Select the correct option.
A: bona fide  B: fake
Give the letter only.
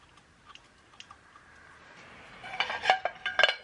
A